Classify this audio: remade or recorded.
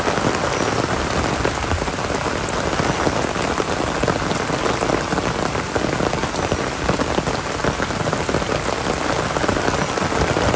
recorded